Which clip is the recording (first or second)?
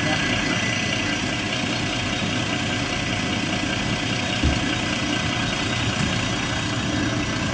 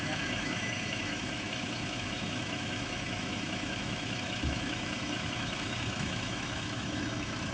first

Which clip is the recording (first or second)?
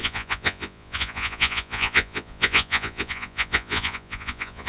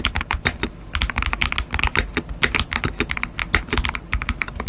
second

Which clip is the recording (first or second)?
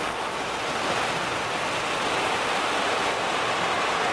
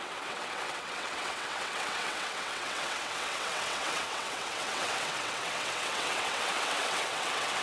first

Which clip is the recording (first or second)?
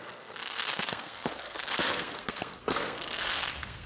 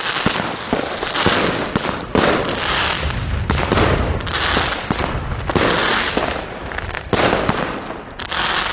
second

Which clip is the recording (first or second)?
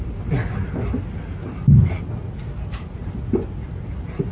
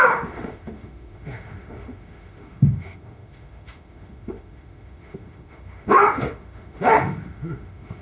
first